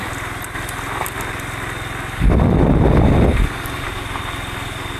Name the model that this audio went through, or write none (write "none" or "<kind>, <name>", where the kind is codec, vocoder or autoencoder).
none